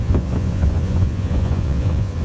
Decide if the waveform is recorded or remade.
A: remade